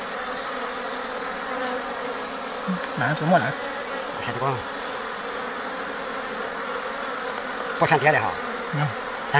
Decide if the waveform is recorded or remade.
recorded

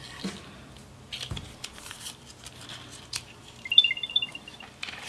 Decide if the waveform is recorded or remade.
remade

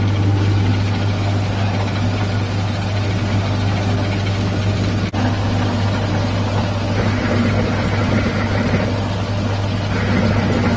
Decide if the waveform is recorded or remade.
recorded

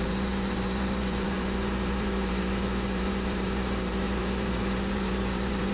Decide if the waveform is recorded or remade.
remade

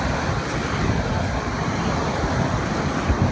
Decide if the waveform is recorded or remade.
recorded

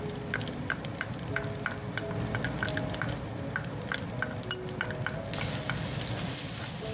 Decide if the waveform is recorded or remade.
recorded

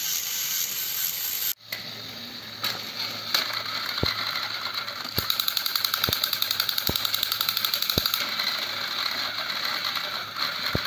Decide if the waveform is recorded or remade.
recorded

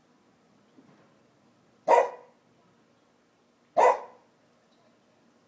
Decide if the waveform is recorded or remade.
recorded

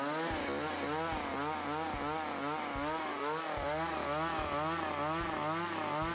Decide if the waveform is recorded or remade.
recorded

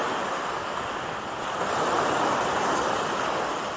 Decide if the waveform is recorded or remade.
recorded